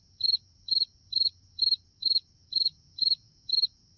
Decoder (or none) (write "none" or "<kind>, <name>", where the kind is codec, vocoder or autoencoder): vocoder, Vocos